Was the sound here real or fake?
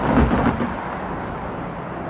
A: real